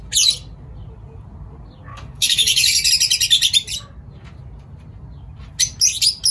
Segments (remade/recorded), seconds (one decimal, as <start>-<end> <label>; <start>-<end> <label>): 0.0-1.9 recorded; 1.9-2.9 remade; 2.9-6.3 recorded